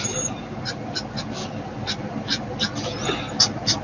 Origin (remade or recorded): recorded